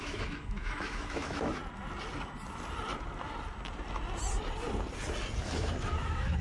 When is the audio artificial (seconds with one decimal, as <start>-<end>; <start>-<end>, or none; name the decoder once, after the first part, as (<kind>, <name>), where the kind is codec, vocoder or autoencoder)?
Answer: 0.0-1.6 (autoencoder, DAC-VAE); 5.4-6.4